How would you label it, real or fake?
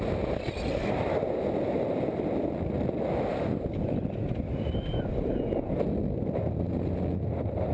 real